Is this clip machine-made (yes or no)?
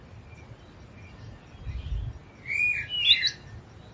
no